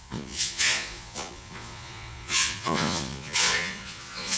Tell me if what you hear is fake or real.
fake